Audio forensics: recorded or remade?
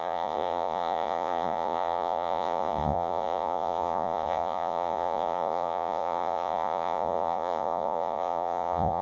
remade